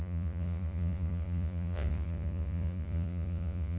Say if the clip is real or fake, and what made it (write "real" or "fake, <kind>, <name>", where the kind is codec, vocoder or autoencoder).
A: fake, vocoder, Vocos